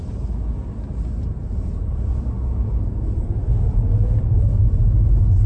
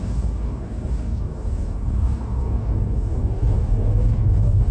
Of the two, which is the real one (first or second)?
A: first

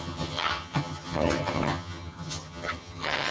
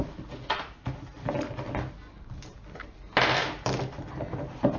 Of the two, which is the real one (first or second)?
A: second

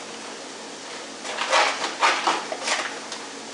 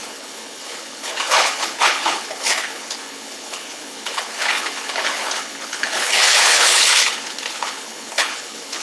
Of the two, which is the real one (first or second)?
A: first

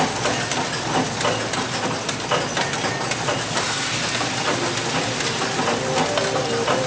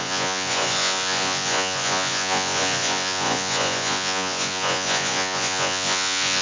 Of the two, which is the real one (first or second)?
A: first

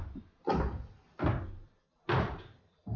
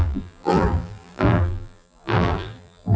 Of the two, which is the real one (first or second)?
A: first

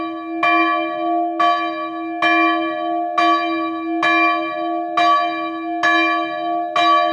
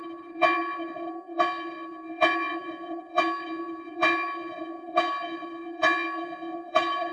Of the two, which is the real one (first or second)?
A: first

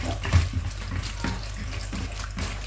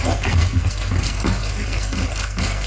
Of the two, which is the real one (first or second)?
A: first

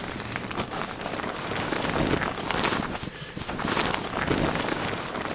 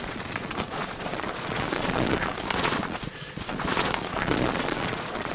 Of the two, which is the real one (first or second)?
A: first